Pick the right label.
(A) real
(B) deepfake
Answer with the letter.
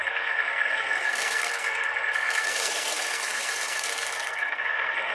B